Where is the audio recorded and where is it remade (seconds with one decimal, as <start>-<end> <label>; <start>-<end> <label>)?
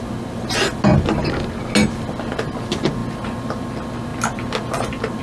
0.0-5.2 recorded